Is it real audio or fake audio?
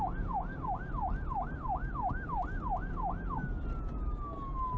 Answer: real